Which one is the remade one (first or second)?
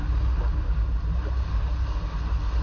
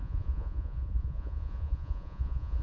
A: second